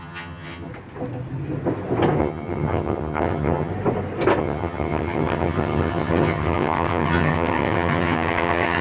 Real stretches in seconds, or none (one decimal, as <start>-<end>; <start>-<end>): 0.7-2.2; 3.7-4.4